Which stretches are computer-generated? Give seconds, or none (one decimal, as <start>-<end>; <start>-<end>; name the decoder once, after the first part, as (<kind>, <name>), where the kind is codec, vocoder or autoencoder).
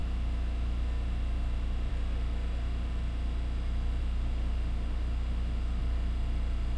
4.0-5.8 (autoencoder, DAC-VAE)